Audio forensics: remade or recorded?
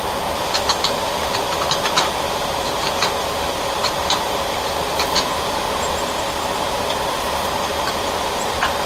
recorded